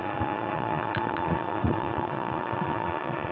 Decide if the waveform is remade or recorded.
remade